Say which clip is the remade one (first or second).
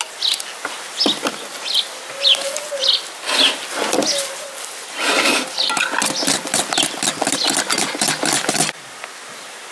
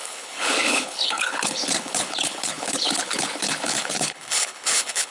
second